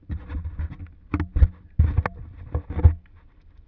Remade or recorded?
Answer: recorded